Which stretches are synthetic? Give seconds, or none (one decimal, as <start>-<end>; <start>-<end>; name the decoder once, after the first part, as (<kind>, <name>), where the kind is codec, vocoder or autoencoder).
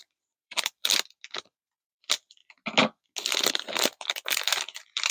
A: 0.0-2.4 (vocoder, BigVGAN v2); 3.5-5.1